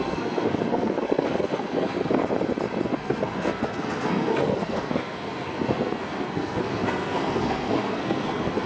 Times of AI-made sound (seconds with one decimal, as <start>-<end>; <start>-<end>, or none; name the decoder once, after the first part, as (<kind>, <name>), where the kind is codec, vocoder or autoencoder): 0.0-2.2 (codec, SNAC); 2.8-8.7